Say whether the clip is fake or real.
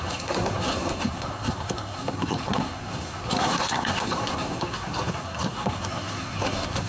fake